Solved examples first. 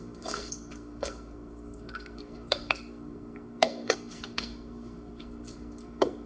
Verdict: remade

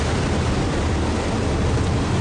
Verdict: recorded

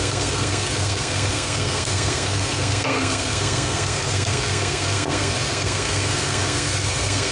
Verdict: remade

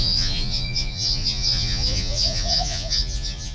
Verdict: remade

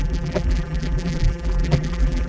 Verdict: remade